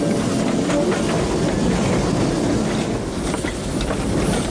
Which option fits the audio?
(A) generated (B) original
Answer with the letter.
B